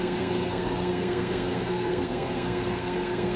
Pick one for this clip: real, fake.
fake